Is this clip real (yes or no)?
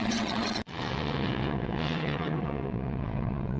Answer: no